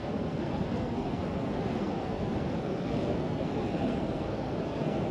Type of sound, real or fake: fake